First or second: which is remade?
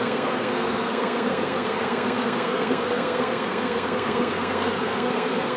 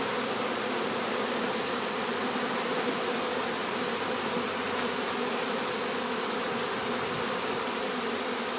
first